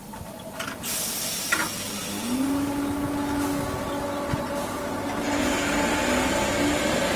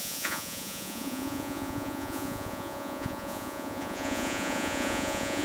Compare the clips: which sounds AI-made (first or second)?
second